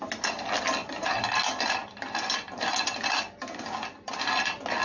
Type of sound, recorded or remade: recorded